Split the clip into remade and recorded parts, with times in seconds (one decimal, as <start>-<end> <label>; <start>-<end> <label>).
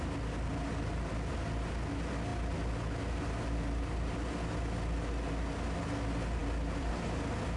0.0-6.4 recorded; 6.4-6.9 remade; 6.9-7.6 recorded